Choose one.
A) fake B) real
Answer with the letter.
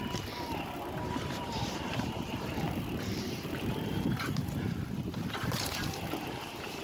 A